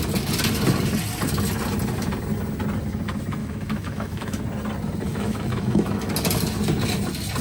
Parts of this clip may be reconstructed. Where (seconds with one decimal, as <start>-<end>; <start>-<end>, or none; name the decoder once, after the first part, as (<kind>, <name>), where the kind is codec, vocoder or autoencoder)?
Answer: 3.4-4.4 (autoencoder, DAC-VAE); 5.1-6.1